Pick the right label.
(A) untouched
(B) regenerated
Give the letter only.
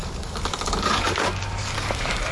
B